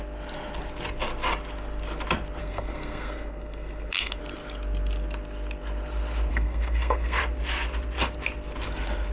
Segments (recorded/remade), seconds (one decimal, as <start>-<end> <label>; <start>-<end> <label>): 0.0-2.4 recorded; 2.4-4.2 remade; 4.2-6.3 recorded; 6.3-7.2 remade; 7.2-9.1 recorded